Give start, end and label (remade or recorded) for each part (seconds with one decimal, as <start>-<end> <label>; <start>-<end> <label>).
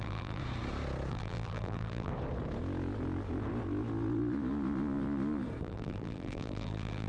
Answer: 0.0-0.4 remade; 0.4-1.1 recorded; 1.1-2.1 remade; 2.1-5.6 recorded; 5.6-7.1 remade